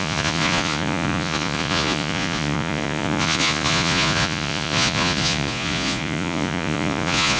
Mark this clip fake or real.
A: fake